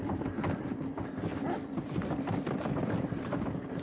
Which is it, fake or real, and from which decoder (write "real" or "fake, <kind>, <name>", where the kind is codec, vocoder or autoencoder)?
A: real